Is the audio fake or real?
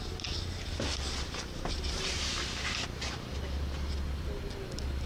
real